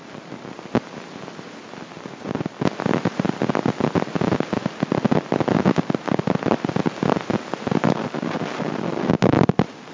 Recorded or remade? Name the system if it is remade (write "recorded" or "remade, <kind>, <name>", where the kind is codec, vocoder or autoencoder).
recorded